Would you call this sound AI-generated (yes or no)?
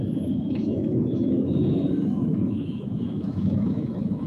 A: yes